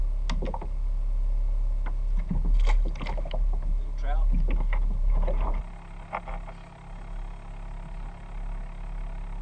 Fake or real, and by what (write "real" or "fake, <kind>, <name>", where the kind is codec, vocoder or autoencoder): real